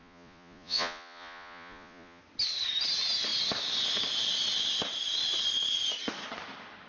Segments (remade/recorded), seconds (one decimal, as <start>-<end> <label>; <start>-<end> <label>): 0.0-2.2 remade; 2.2-6.9 recorded